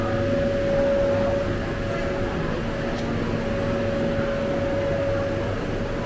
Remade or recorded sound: recorded